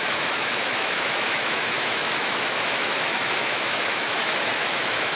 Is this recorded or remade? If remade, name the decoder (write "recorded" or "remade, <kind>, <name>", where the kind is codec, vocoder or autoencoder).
remade, autoencoder, DAC-VAE